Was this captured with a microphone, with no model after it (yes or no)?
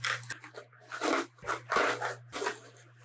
yes